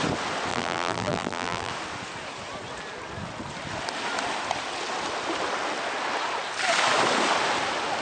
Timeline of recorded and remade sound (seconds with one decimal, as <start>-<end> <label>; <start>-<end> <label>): 0.0-0.5 recorded; 0.5-1.7 remade; 1.7-8.0 recorded